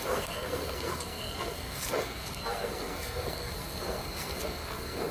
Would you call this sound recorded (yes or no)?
no